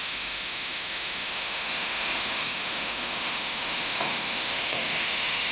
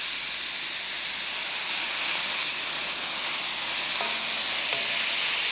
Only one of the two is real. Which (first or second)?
second